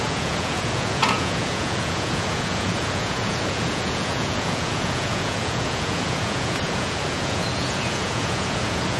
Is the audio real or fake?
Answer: fake